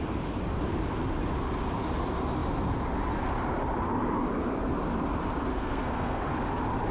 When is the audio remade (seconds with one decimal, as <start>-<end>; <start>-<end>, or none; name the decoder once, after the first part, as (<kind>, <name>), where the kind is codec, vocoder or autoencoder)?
5.5-6.2 (codec, SNAC)